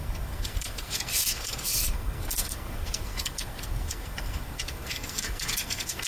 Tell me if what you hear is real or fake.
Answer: fake